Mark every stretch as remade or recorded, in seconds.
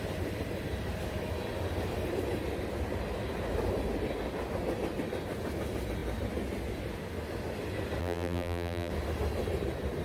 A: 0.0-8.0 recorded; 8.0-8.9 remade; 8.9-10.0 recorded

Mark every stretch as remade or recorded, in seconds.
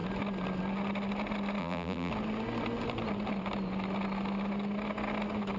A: 0.0-1.6 recorded; 1.6-2.1 remade; 2.1-5.6 recorded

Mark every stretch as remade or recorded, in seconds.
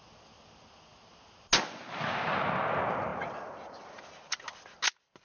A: 0.0-5.2 recorded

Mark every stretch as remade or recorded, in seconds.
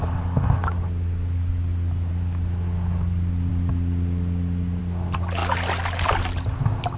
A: 0.0-7.0 recorded